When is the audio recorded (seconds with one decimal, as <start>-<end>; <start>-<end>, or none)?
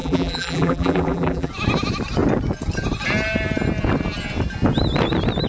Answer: 1.5-5.5